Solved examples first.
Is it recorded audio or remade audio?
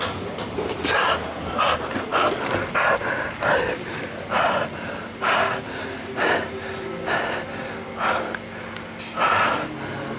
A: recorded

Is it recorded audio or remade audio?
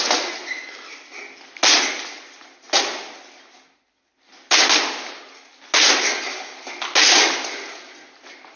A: recorded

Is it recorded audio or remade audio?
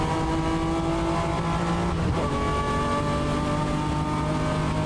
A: recorded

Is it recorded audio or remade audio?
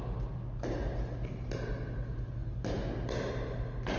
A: recorded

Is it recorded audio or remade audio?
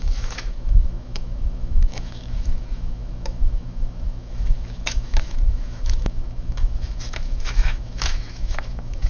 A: remade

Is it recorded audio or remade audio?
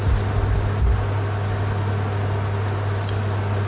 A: recorded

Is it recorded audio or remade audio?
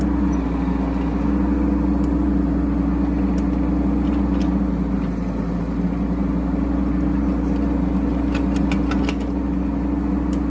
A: recorded